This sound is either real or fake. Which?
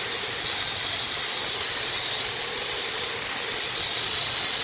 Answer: real